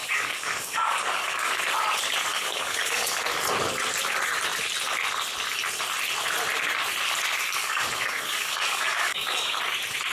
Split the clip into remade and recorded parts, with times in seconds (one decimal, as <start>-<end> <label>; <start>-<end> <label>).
0.0-1.6 remade; 1.6-2.3 recorded; 2.3-3.2 remade; 3.2-7.6 recorded; 7.6-9.6 remade; 9.6-10.1 recorded